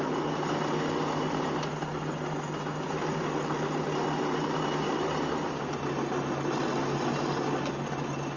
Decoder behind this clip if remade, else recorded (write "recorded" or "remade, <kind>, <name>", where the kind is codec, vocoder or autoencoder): recorded